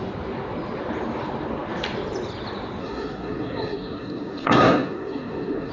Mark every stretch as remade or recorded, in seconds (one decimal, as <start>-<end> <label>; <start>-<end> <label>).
0.0-2.8 recorded; 2.8-5.7 remade